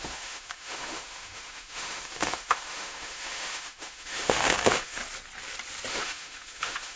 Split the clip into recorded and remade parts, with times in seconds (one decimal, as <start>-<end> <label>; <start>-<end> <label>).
0.0-5.0 remade; 5.0-5.9 recorded; 5.9-7.0 remade